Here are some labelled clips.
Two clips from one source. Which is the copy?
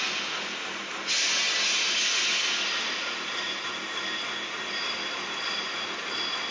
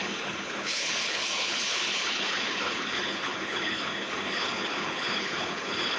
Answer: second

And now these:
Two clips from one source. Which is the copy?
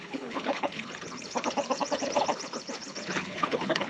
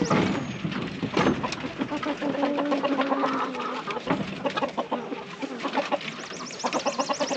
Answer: first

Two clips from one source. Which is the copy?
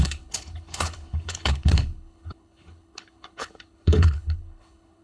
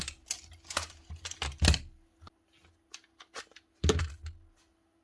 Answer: first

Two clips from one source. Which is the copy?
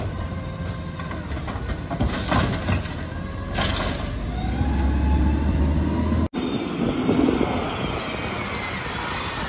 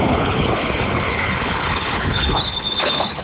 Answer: second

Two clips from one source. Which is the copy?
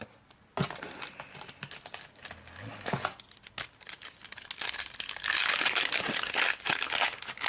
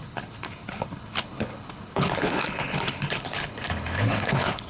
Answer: second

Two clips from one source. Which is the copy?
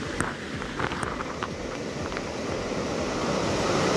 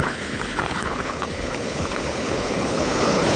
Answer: second